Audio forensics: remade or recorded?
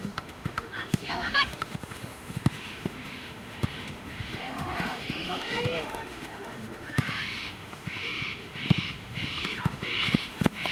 remade